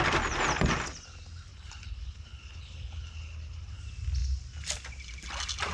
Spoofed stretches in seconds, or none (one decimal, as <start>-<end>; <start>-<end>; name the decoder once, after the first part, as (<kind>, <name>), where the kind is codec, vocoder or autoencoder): 1.5-3.8 (codec, HILCodec)